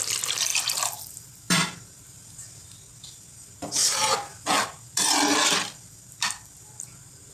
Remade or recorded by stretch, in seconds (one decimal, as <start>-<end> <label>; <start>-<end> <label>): 0.0-3.8 remade; 3.8-4.5 recorded; 4.5-7.3 remade